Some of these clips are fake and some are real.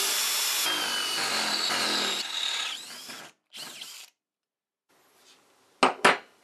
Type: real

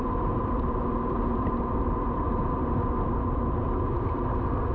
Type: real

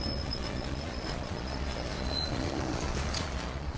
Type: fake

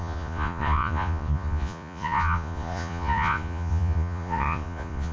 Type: fake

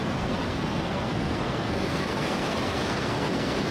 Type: fake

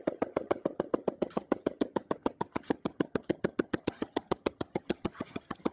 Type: fake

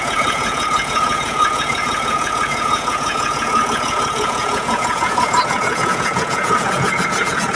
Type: fake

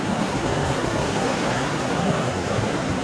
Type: fake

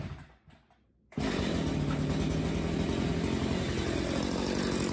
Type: real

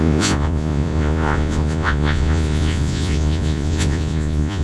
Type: fake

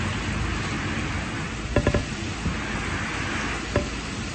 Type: real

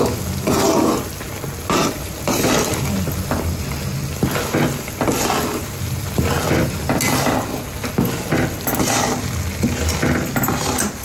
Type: real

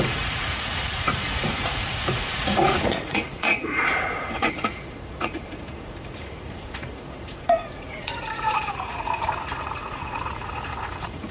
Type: fake